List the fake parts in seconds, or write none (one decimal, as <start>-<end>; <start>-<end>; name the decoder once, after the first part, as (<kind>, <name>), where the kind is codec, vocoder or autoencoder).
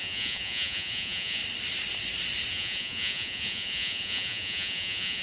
0.0-1.4 (vocoder, Vocos); 2.5-5.2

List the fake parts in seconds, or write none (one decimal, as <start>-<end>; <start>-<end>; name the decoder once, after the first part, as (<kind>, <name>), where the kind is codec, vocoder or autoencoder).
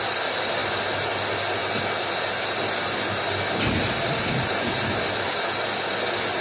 none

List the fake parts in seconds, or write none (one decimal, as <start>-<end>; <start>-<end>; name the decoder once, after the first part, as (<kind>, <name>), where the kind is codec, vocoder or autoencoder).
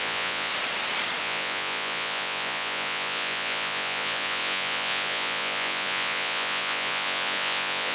0.0-0.5 (vocoder, Vocos); 1.2-7.9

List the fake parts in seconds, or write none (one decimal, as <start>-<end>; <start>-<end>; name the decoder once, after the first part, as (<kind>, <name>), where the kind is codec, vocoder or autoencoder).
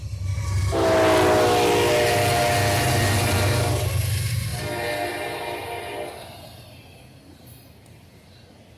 none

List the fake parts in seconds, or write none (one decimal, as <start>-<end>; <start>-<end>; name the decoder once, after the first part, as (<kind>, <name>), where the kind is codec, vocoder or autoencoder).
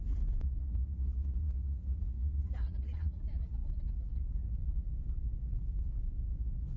0.6-3.2 (vocoder, Vocos)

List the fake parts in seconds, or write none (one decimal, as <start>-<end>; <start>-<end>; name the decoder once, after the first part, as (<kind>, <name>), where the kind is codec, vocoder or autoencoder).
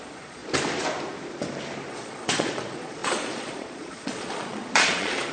0.0-0.4 (vocoder, Vocos); 1.9-5.3